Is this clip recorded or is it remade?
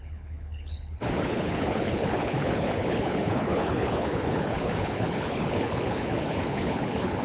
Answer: remade